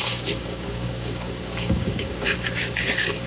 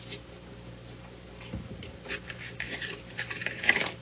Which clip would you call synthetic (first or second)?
first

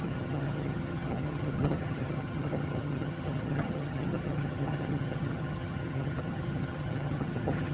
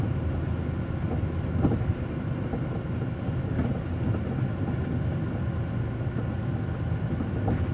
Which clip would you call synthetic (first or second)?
first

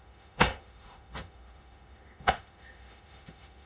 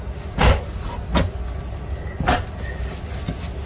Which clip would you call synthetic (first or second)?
first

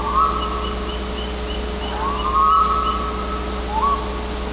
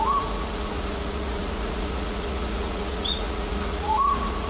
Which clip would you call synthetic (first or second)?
second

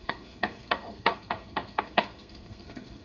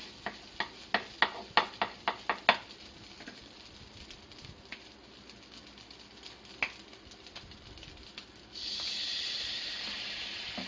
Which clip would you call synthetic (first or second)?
first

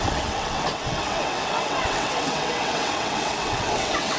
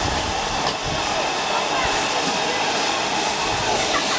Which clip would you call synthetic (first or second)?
first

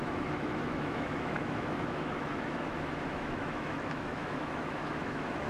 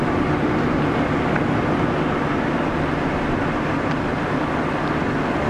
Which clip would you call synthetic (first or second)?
first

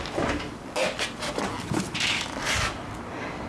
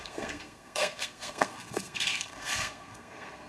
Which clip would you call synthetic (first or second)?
second